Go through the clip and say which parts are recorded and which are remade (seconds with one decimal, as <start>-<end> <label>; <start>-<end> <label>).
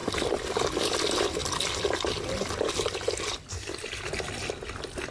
0.0-5.1 recorded